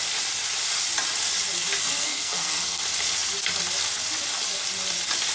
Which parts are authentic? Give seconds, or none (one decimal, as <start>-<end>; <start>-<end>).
0.0-1.8; 2.8-5.3